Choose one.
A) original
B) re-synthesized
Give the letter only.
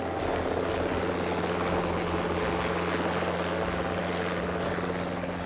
A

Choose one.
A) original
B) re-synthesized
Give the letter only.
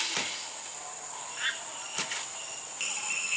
A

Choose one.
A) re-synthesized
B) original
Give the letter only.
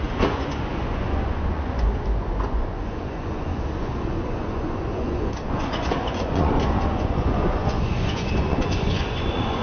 A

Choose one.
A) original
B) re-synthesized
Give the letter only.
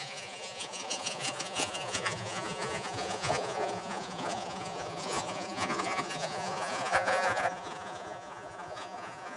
B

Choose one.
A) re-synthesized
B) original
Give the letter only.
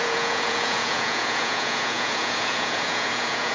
A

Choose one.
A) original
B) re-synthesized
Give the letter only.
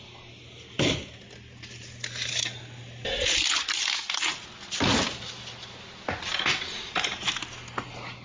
A